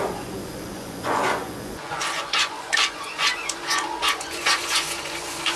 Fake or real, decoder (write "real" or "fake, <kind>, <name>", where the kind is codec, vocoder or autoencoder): fake, vocoder, Vocos